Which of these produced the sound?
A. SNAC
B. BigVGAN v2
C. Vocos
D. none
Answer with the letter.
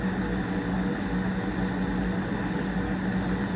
D